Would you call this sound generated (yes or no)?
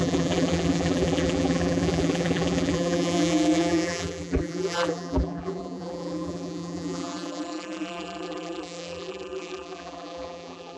yes